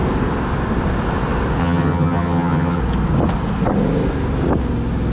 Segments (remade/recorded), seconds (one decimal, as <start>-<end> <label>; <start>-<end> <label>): 0.0-1.6 recorded; 1.6-2.8 remade; 2.8-5.1 recorded